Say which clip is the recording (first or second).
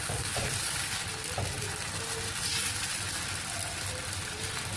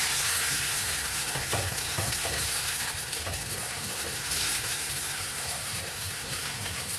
first